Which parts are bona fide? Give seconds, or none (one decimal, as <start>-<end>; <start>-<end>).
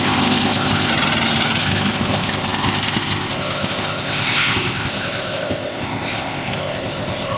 0.9-1.6